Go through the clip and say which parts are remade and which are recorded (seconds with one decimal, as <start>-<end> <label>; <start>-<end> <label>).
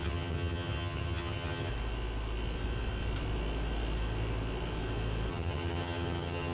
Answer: 0.0-1.7 remade; 1.7-5.3 recorded; 5.3-6.5 remade